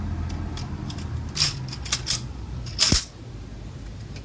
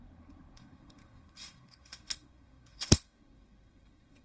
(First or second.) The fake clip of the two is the second